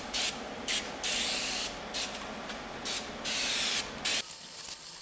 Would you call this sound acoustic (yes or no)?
yes